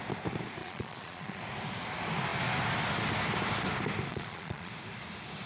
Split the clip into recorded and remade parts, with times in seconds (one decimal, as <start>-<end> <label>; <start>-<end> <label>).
0.0-0.6 recorded; 0.6-1.4 remade; 1.4-4.1 recorded; 4.1-4.7 remade; 4.7-5.5 recorded